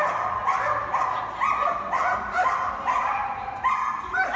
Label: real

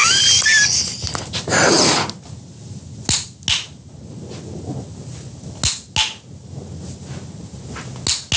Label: real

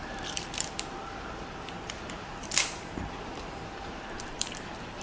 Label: fake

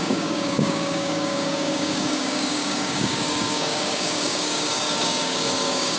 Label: fake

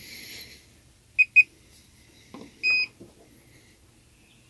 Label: real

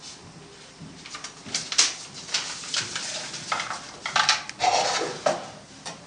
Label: real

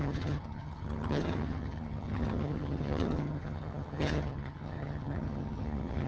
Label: fake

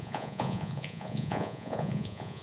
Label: fake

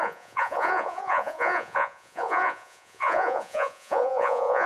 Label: fake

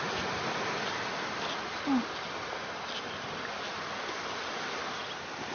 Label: real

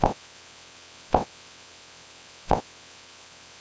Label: fake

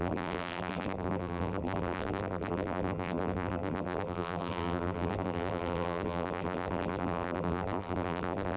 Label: fake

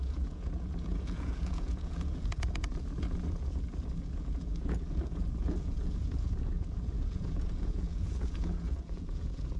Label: fake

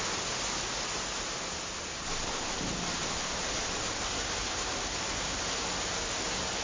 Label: real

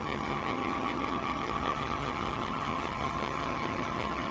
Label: fake